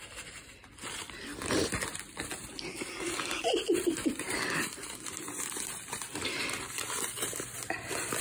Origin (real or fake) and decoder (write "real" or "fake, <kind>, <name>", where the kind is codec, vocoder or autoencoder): fake, vocoder, BigVGAN v2